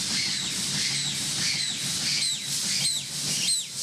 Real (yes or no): yes